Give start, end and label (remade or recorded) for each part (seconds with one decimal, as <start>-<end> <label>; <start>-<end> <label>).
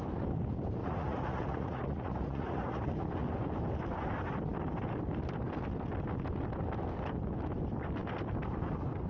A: 0.0-0.8 recorded; 0.8-2.9 remade; 2.9-9.1 recorded